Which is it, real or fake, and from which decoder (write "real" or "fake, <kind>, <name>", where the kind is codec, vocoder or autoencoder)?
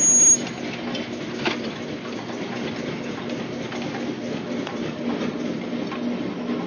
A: real